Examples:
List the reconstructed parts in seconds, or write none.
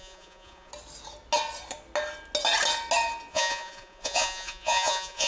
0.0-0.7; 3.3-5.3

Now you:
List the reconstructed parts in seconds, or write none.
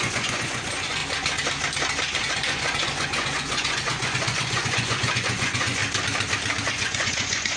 0.0-1.0; 2.2-5.8; 6.7-7.6